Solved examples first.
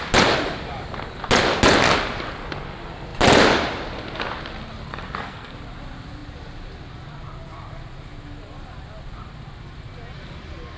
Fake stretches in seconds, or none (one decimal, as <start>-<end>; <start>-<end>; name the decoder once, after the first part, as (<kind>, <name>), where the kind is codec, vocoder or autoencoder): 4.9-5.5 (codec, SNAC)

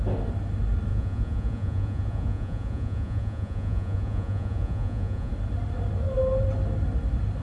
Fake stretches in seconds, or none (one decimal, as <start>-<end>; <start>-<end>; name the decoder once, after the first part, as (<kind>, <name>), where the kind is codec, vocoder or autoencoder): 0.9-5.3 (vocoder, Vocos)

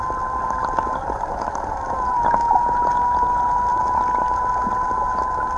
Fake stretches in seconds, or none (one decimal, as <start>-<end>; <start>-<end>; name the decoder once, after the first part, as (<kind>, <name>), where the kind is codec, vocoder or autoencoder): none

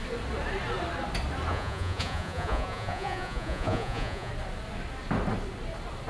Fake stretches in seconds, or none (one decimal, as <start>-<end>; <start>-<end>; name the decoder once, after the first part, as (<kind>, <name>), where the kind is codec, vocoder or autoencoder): 1.5-4.3 (vocoder, Vocos)

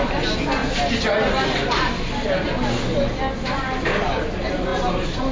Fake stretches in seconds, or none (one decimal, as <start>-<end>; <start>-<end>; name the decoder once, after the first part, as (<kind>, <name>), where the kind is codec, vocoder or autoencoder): none

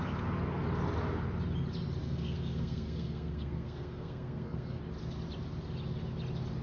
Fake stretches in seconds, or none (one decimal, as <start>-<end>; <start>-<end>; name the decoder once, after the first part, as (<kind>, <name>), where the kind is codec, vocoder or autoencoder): 2.0-4.8 (codec, SNAC)

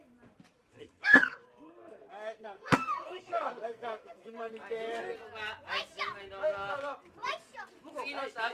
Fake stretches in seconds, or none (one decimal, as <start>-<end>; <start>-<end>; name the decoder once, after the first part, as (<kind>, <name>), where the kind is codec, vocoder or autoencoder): 0.8-4.5 (codec, SNAC)

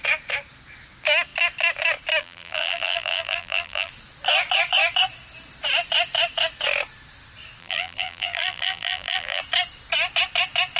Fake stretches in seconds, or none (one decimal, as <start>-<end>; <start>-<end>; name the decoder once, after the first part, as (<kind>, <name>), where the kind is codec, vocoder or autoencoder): 2.2-3.9 (vocoder, BigVGAN v2); 7.6-9.4